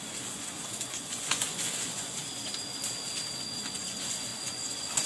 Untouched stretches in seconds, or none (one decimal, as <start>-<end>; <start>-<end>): 2.2-3.6